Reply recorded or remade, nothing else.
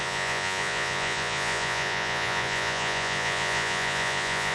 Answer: remade